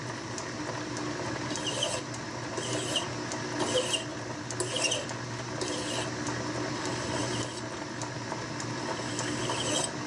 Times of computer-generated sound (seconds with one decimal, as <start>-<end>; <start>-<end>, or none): none